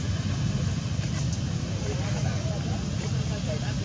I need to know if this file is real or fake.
real